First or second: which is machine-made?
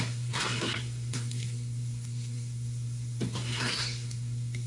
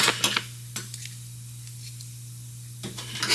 first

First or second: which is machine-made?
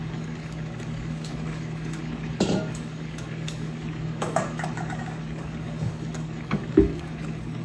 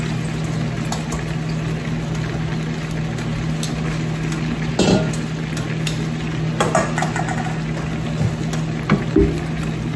first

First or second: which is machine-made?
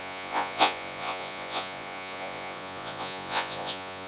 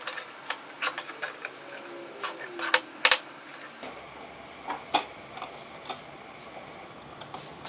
first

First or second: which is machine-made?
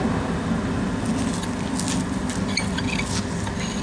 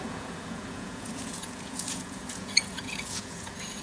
second